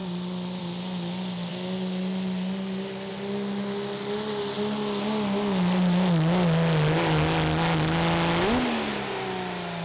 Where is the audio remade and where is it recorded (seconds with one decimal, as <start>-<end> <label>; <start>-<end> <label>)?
0.0-9.8 recorded